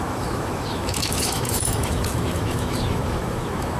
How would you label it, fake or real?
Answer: fake